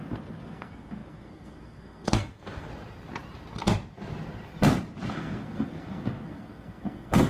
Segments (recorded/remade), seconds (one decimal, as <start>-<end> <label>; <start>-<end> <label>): 0.0-2.7 remade; 2.7-5.1 recorded; 5.1-7.3 remade